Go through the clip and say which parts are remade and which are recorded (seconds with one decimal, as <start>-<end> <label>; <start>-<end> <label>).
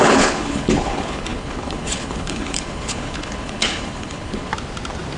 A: 0.0-4.5 remade; 4.5-5.2 recorded